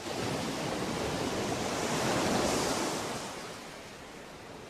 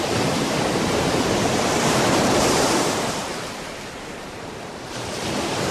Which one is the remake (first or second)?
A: second